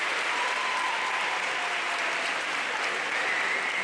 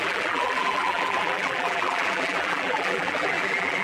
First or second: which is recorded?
first